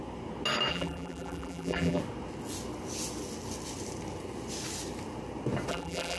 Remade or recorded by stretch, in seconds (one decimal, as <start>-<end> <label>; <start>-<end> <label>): 0.0-0.7 recorded; 0.7-2.0 remade; 2.0-5.7 recorded; 5.7-6.2 remade